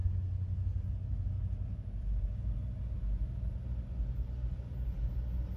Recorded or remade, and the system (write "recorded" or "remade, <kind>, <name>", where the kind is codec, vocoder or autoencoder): recorded